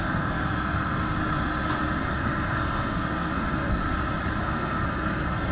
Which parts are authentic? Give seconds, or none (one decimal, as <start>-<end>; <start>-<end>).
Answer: 1.2-2.1; 3.8-4.4